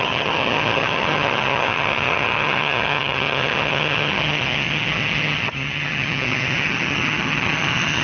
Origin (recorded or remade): remade